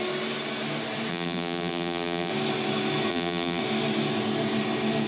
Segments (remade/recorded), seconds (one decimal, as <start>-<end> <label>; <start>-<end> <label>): 0.0-1.1 recorded; 1.1-2.3 remade; 2.3-3.1 recorded; 3.1-3.6 remade; 3.6-5.1 recorded